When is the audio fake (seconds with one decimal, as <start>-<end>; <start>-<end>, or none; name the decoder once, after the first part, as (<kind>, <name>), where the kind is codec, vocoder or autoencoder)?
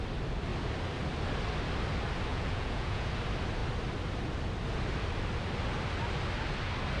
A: 2.3-3.1 (vocoder, Vocos)